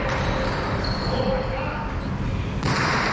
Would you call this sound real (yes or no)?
yes